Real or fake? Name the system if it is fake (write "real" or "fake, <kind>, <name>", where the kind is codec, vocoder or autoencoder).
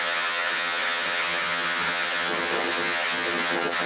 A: fake, vocoder, HiFi-GAN